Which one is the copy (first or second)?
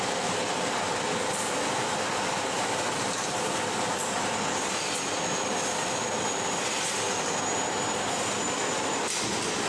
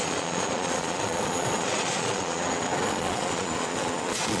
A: second